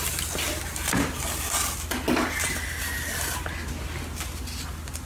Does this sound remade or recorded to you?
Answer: recorded